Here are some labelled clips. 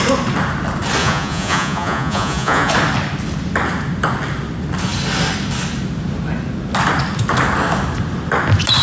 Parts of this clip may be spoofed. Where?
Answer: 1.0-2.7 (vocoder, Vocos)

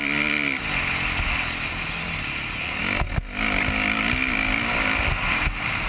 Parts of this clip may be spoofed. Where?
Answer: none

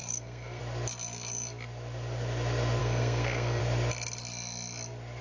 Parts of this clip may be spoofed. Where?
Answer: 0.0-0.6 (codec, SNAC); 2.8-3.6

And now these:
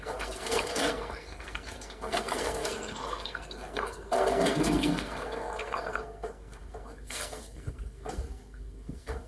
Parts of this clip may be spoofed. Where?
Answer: 0.0-9.3 (codec, SNAC)

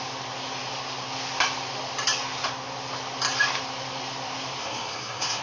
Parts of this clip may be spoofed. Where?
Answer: 4.6-5.4 (codec, SNAC)

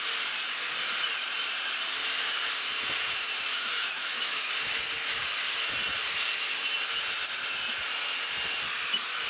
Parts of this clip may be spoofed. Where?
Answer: 3.5-4.5 (autoencoder, DAC-VAE)